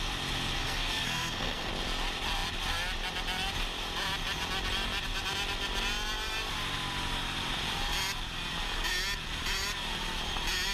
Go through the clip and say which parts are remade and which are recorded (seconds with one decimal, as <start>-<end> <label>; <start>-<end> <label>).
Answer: 0.0-0.6 recorded; 0.6-1.7 remade; 1.7-10.7 recorded